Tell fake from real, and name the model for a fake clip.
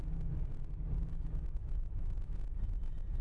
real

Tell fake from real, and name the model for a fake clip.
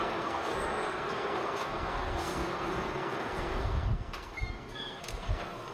fake, codec, SNAC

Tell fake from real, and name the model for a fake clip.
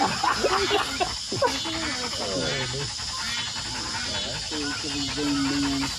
real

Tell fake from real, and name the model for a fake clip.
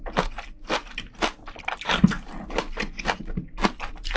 real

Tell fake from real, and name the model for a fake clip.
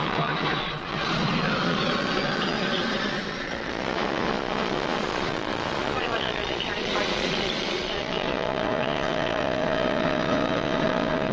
fake, vocoder, Vocos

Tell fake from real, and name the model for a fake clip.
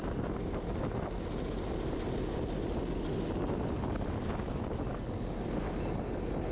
real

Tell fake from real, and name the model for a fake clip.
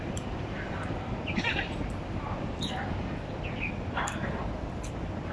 fake, vocoder, BigVGAN v2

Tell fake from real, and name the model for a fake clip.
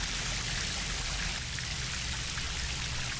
real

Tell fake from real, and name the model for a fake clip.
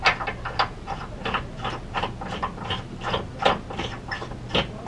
real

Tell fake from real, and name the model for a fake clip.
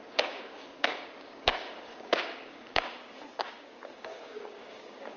fake, codec, DAC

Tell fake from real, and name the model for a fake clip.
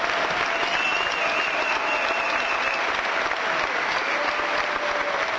real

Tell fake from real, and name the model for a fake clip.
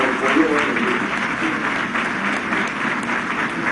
real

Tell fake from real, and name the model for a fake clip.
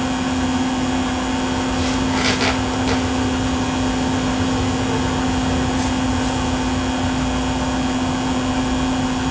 real